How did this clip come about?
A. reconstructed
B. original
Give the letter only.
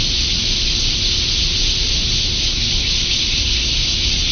B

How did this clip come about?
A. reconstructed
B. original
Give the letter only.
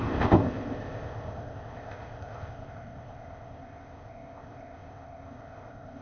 A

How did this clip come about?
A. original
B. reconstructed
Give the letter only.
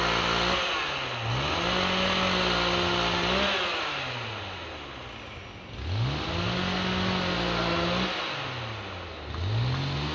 A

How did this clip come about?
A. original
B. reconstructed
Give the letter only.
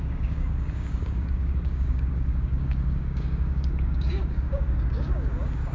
B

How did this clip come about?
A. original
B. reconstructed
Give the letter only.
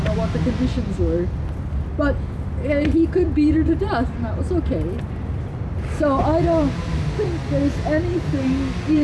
A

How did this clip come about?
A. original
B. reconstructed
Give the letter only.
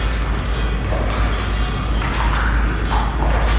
A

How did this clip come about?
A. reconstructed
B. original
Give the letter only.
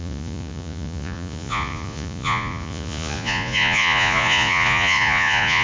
A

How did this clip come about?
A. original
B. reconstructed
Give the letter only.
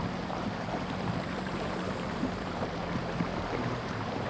B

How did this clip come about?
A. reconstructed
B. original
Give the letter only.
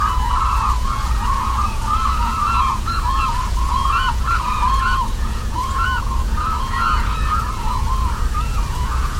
A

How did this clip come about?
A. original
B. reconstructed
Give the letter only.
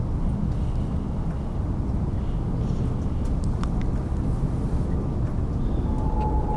A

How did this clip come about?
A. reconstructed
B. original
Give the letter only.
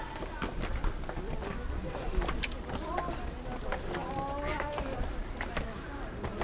B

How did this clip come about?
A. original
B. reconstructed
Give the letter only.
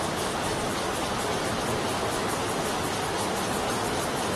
A